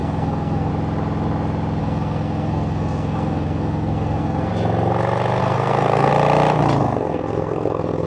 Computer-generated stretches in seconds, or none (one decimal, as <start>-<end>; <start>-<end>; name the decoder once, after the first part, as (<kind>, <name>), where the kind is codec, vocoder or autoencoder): 0.0-0.7 (codec, SNAC); 1.8-4.5; 5.4-6.1; 6.8-8.1